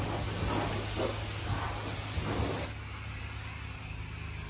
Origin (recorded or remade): recorded